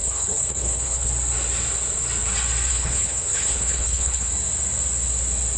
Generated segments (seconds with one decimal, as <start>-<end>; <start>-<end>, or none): 0.0-1.1; 2.7-4.3